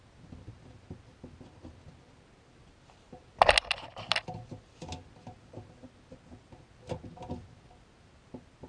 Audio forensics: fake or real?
real